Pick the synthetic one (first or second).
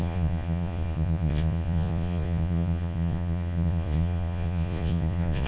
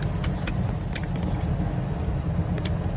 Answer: first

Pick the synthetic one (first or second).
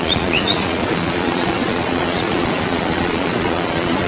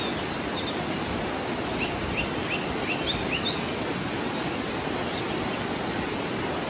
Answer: first